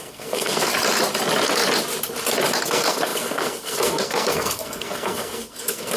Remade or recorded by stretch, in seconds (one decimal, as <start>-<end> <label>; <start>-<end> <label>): 0.0-0.7 remade; 0.7-2.6 recorded; 2.6-6.0 remade